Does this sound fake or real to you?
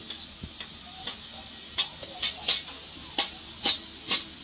real